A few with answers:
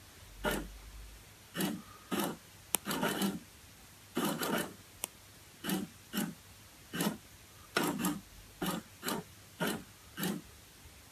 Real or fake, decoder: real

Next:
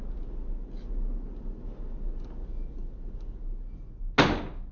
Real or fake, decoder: real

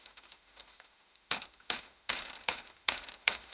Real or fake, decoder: fake, autoencoder, DAC-VAE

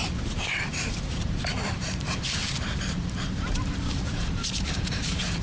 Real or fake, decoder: fake, vocoder, BigVGAN v2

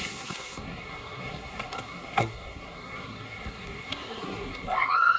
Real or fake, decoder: fake, codec, SNAC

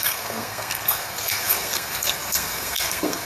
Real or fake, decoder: fake, codec, SNAC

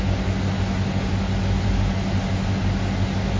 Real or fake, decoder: real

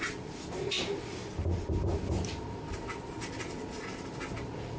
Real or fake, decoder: real